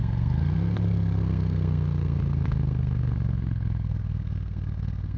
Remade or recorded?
remade